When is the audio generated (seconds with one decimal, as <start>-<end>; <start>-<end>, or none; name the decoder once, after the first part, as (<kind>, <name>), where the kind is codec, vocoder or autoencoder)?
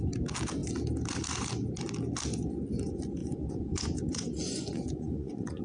3.2-5.6 (vocoder, Vocos)